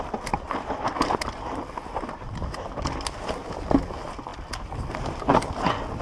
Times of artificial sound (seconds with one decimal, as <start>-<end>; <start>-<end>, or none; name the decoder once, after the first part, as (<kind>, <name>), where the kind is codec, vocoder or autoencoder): none